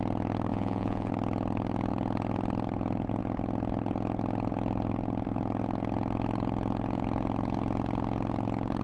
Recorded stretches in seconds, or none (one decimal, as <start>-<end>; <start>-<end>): 0.0-0.5; 1.1-8.8